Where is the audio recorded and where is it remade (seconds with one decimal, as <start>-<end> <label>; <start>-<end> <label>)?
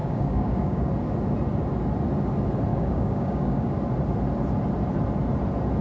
0.0-0.9 remade; 0.9-2.7 recorded; 2.7-3.7 remade; 3.7-5.8 recorded